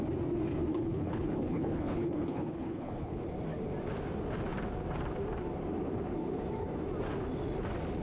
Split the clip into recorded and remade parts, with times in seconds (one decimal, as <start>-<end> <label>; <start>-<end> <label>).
0.0-0.7 recorded; 0.7-3.2 remade; 3.2-8.0 recorded